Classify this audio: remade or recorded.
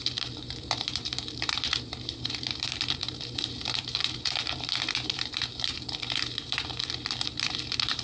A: remade